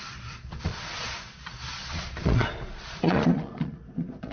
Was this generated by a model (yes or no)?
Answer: yes